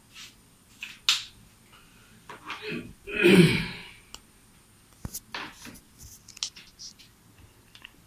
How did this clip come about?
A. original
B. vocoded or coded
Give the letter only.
A